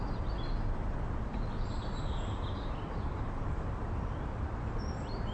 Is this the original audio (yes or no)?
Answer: yes